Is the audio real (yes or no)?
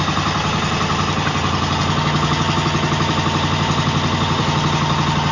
yes